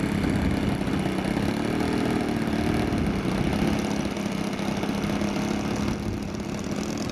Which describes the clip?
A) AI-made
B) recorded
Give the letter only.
B